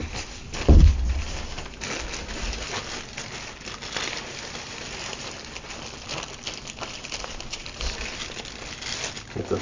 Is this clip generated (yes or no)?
no